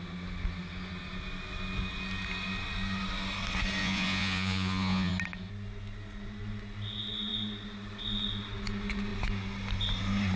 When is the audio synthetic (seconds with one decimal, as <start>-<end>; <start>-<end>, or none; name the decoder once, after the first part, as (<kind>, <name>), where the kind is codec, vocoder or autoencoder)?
3.8-5.1 (vocoder, Vocos)